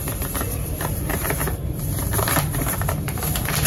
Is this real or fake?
fake